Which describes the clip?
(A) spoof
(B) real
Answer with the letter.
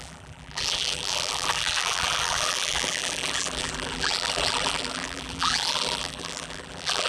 A